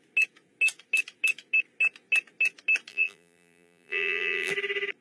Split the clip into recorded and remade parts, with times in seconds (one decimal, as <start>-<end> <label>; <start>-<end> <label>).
0.0-2.9 recorded; 2.9-4.5 remade; 4.5-5.0 recorded